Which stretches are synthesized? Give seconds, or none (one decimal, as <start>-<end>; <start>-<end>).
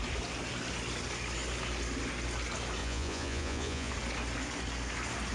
2.8-3.9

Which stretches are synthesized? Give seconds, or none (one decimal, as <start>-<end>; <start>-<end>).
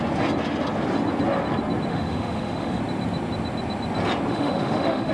1.9-2.8; 4.3-5.1